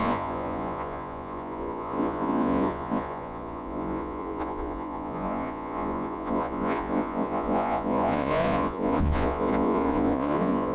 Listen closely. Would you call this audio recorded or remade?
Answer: remade